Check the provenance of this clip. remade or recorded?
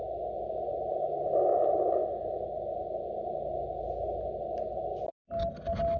recorded